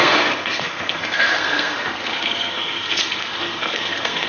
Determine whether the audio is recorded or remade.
remade